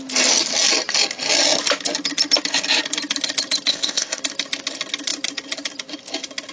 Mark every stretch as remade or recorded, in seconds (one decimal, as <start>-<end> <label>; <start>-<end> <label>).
0.0-3.7 recorded; 3.7-4.2 remade; 4.2-6.5 recorded